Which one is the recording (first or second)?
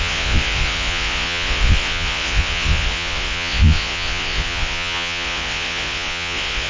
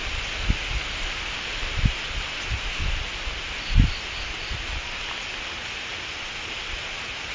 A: second